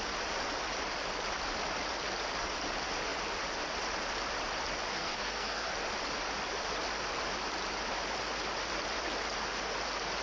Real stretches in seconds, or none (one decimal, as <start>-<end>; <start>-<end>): 0.0-4.9; 5.7-10.2